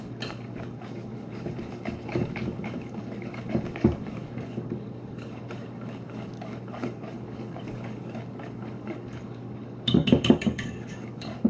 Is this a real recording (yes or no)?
no